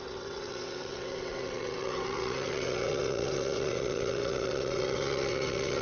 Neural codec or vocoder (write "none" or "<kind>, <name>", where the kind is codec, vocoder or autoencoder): vocoder, WaveNeXt